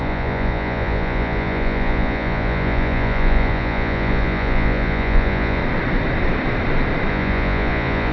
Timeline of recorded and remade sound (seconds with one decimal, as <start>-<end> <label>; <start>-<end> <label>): 0.0-5.6 remade; 5.6-7.1 recorded; 7.1-8.1 remade

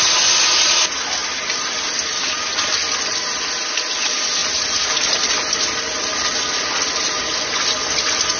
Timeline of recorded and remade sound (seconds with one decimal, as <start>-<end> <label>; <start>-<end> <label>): 0.0-8.4 recorded

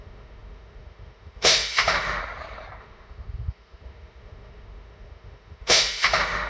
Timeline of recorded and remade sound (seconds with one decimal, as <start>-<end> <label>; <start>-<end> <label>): 0.0-2.2 remade; 2.2-2.8 recorded; 2.8-6.5 remade

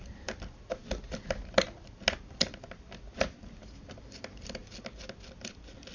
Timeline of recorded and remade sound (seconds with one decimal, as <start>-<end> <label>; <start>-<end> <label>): 0.0-5.9 recorded

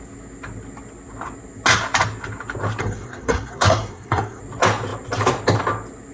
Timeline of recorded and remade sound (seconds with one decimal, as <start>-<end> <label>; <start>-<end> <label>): 0.0-2.8 recorded; 2.8-4.4 remade; 4.4-6.1 recorded